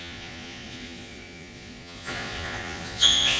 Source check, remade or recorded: remade